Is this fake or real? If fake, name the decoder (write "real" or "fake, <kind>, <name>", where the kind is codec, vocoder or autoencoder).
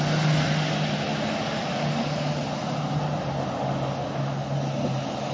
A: real